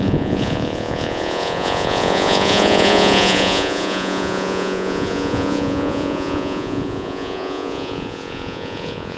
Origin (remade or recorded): remade